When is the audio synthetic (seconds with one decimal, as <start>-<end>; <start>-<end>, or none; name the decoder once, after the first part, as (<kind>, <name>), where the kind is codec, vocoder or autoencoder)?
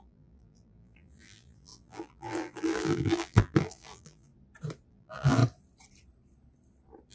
0.0-4.3 (vocoder, BigVGAN v2); 4.9-5.4